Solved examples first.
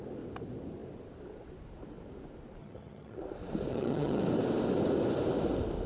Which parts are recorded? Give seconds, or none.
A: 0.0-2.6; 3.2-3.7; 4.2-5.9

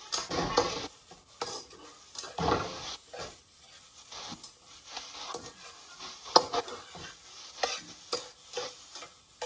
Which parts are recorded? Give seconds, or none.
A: 0.0-9.5

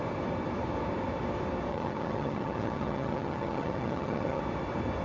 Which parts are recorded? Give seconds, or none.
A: 0.0-1.7; 4.4-5.0

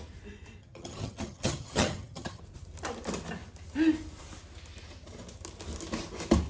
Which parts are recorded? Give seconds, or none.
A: 0.0-0.6; 2.4-6.5

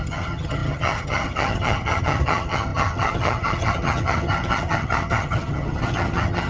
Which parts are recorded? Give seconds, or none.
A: none

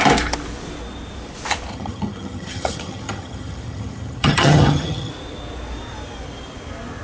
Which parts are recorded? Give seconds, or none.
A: 0.0-1.7; 5.1-7.0